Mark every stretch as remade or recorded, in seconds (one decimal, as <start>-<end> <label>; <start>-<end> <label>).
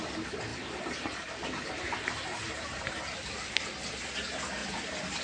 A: 0.0-0.5 recorded; 0.5-3.6 remade; 3.6-4.6 recorded; 4.6-5.2 remade